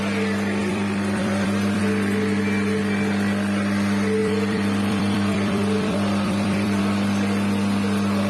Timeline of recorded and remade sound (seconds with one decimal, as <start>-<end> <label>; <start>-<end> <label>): 0.0-0.6 recorded; 0.6-1.8 remade; 1.8-4.2 recorded; 4.2-6.8 remade; 6.8-8.3 recorded